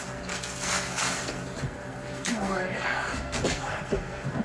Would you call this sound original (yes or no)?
no